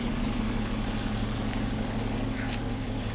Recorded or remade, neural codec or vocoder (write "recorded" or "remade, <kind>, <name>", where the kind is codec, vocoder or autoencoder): remade, codec, DAC